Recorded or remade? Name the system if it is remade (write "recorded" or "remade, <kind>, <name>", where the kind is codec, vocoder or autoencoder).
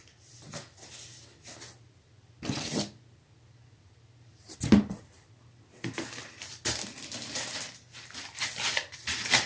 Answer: recorded